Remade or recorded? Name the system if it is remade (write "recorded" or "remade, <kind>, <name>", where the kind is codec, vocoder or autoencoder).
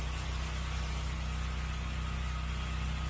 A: recorded